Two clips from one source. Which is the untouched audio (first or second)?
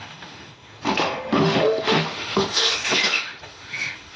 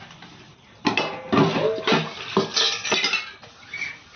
second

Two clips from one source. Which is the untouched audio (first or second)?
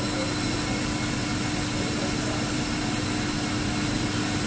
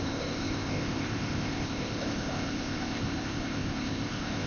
first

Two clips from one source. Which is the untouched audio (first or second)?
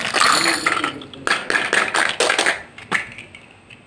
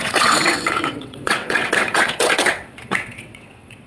first